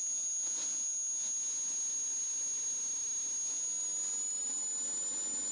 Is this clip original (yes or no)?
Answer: yes